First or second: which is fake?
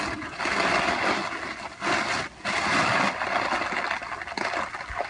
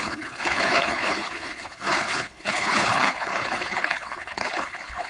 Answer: second